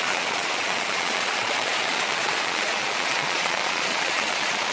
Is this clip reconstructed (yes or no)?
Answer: yes